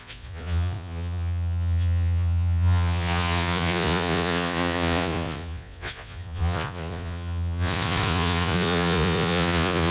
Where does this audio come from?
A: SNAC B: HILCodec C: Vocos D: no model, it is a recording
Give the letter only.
C